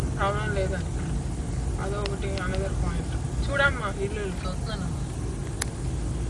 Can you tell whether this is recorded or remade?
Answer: recorded